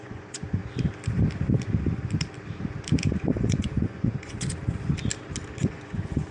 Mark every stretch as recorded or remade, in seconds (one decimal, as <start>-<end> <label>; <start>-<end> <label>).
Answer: 0.0-0.6 remade; 0.6-3.2 recorded; 3.2-4.6 remade; 4.6-5.6 recorded; 5.6-6.3 remade